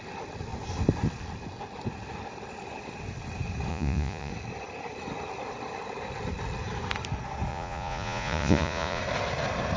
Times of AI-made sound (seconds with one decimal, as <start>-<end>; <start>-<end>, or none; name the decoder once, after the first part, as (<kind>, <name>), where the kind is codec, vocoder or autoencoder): 3.7-4.3 (vocoder, Vocos); 7.5-9.0

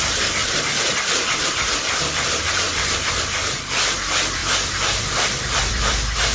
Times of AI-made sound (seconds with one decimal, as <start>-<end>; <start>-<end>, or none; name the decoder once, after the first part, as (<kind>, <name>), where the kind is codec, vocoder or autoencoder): 0.0-0.4 (vocoder, BigVGAN v2); 1.4-6.3

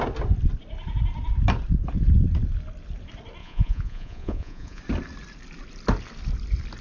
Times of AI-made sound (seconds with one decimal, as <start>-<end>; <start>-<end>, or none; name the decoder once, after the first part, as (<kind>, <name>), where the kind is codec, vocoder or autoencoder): 3.4-4.8 (vocoder, Vocos)

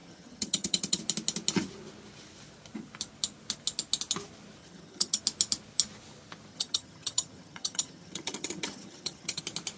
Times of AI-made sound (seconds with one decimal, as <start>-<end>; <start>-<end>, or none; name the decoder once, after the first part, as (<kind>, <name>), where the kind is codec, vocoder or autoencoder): 0.0-1.0 (vocoder, HiFi-GAN); 4.6-5.2; 6.5-9.4

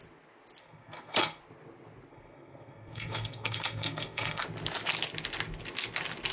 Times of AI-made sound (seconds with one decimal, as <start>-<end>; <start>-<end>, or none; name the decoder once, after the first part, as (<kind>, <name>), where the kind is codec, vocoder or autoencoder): 0.6-1.4 (codec, SNAC); 2.1-4.4